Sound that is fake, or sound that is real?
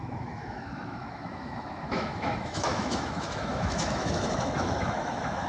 fake